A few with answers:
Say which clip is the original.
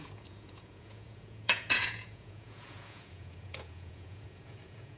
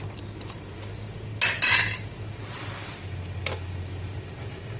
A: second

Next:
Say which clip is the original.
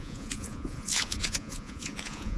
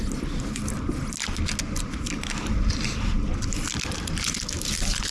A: second